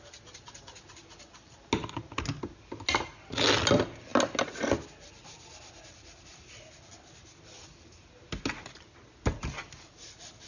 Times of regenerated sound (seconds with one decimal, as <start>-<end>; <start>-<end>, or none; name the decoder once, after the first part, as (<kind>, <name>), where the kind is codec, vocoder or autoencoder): none

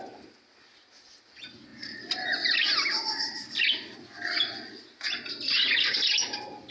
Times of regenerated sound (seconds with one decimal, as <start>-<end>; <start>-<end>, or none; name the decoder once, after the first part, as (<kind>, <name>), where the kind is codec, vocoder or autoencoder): none

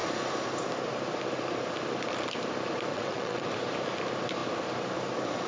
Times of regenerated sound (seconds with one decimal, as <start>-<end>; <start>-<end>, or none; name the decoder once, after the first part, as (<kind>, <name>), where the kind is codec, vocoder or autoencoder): 2.9-3.5 (vocoder, WaveNeXt)

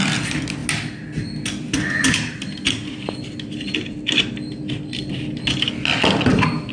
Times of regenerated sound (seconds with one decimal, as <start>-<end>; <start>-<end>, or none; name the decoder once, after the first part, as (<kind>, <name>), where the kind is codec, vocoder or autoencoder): none

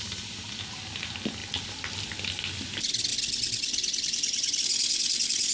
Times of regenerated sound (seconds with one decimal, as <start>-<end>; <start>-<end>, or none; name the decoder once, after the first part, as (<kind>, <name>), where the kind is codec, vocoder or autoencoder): 1.4-2.4 (vocoder, BigVGAN v2); 3.1-4.6

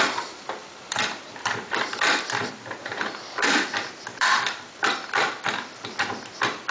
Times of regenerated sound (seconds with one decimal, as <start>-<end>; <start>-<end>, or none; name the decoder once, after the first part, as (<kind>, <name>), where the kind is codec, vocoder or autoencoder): 0.0-4.9 (vocoder, BigVGAN v2)

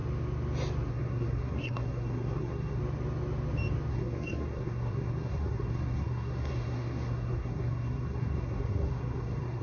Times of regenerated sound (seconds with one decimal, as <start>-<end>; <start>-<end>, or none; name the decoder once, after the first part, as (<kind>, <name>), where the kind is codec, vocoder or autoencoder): 0.9-2.8 (codec, SNAC); 3.9-9.6

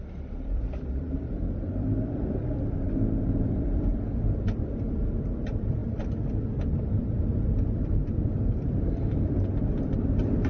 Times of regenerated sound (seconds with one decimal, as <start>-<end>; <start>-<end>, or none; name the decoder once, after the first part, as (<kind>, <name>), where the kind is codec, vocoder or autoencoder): 0.0-5.8 (vocoder, BigVGAN v2); 6.5-10.5